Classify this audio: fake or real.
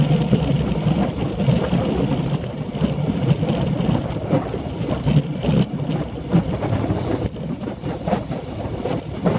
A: fake